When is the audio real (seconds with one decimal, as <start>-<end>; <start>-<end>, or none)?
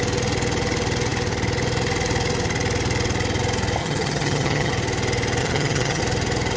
0.0-3.8; 4.7-5.4; 6.0-6.6